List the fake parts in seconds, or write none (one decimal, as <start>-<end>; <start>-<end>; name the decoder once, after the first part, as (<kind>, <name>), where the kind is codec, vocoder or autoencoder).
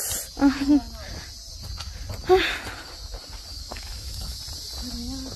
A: 3.5-4.4 (autoencoder, DAC-VAE)